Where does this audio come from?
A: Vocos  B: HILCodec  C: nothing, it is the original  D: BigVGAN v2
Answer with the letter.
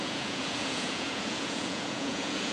A